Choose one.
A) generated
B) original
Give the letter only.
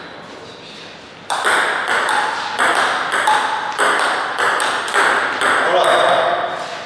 B